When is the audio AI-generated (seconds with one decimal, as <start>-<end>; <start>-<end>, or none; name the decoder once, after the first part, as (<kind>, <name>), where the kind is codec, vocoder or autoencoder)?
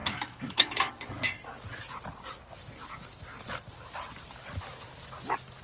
0.0-0.9 (autoencoder, DAC-VAE)